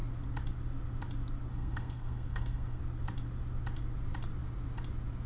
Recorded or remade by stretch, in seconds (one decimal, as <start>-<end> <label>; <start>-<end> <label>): 0.0-1.5 recorded; 1.5-2.8 remade; 2.8-5.3 recorded